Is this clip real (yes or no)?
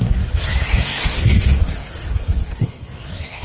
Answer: no